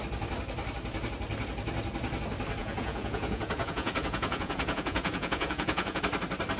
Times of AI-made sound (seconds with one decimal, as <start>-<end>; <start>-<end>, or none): 2.6-6.0